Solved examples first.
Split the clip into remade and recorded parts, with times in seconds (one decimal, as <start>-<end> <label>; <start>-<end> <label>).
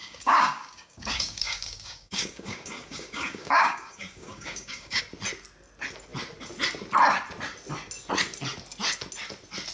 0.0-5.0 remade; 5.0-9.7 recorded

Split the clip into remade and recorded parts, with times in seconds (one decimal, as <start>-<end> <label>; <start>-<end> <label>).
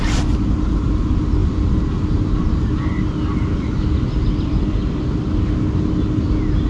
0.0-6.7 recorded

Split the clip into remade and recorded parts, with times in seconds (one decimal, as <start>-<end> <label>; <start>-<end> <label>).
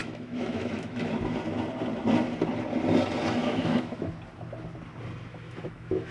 0.0-1.2 remade; 1.2-3.4 recorded; 3.4-4.1 remade; 4.1-5.3 recorded; 5.3-6.1 remade